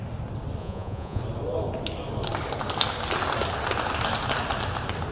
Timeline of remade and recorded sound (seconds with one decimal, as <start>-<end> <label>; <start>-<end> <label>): 0.0-0.6 recorded; 0.6-1.2 remade; 1.2-5.1 recorded